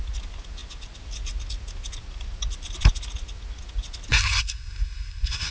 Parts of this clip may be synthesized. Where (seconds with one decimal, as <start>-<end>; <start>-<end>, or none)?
4.1-5.5